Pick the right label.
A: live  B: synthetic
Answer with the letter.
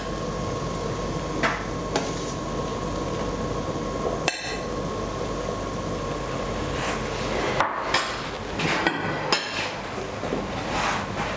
A